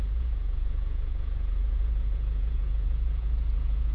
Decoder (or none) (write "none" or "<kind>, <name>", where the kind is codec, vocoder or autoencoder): vocoder, Vocos